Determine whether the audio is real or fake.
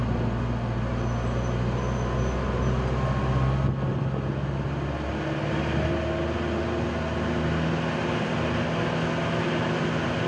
real